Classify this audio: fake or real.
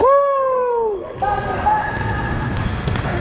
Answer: fake